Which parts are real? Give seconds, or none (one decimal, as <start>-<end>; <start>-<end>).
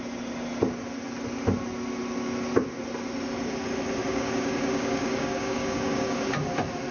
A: 0.0-4.0; 6.3-6.9